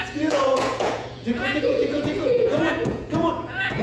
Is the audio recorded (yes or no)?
no